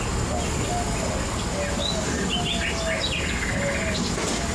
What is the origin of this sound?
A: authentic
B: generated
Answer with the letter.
A